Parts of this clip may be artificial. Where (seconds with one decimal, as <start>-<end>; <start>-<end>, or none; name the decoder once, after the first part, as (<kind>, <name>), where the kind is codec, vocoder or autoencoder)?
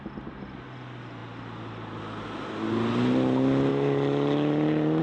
3.7-5.0 (vocoder, BigVGAN v2)